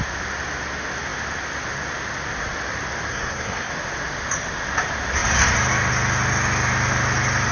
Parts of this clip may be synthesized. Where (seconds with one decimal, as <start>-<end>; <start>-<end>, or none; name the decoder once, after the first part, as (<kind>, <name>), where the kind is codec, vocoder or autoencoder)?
3.1-3.7 (codec, SNAC)